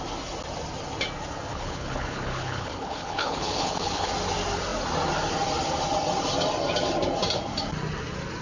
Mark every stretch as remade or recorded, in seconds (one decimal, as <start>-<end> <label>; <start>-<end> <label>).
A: 0.0-1.5 recorded; 1.5-4.1 remade; 4.1-8.4 recorded